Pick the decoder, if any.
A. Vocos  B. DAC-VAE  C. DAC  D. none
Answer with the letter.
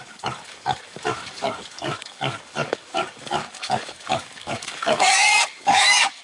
C